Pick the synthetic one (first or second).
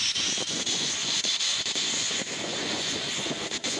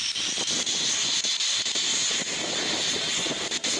first